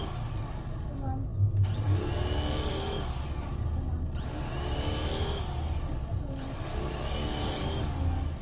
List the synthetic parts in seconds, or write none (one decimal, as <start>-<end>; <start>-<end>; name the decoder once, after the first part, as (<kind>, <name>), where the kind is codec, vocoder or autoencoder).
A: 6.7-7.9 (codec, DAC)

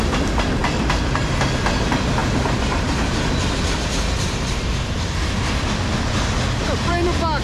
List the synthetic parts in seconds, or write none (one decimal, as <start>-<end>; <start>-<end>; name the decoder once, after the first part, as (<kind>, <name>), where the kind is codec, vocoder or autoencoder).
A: none

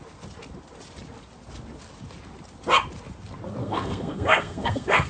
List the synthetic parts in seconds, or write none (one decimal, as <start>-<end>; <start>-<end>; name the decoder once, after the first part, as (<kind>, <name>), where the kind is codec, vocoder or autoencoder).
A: 3.6-5.1 (codec, SNAC)